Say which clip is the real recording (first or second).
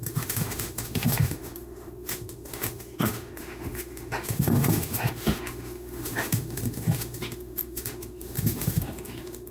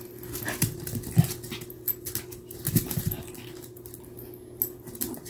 second